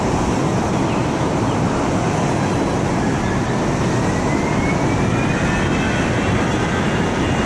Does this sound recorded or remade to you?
recorded